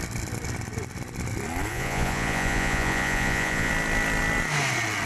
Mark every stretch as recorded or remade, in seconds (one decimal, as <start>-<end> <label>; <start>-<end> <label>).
0.0-1.7 recorded; 1.7-3.7 remade; 3.7-5.1 recorded